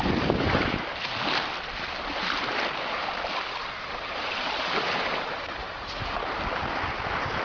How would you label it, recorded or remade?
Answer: recorded